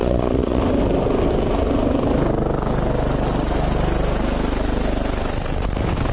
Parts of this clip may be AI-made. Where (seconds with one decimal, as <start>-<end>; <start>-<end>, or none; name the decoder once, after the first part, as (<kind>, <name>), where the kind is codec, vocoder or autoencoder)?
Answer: 0.0-0.6 (vocoder, Vocos)